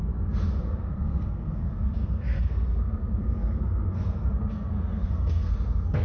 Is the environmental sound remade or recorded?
remade